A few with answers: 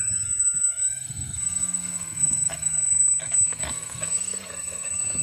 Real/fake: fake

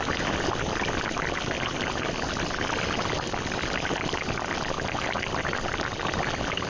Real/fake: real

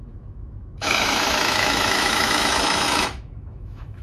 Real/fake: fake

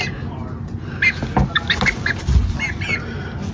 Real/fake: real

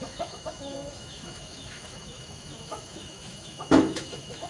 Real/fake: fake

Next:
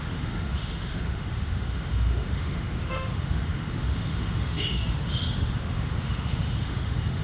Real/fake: fake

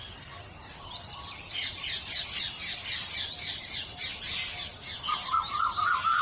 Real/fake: real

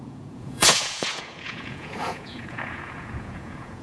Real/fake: fake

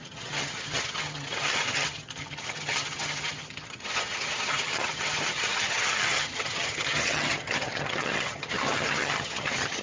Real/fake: fake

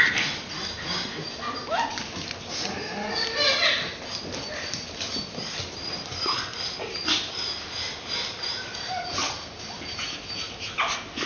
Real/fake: real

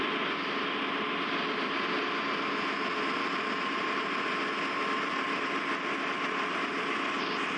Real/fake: real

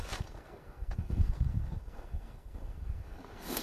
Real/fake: fake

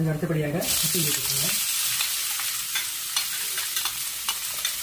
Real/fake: real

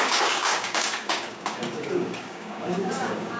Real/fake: fake